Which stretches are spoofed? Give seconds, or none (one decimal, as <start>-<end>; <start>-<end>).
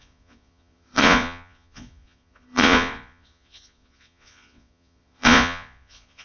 0.0-6.2